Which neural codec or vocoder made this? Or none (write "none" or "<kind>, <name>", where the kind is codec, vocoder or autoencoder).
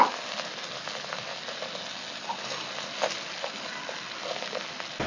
none